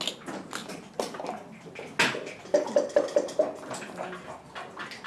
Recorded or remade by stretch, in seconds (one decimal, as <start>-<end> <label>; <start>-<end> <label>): 0.0-5.1 recorded